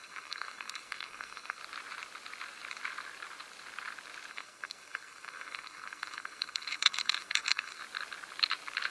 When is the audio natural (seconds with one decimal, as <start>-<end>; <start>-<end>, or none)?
1.6-4.3; 7.8-8.9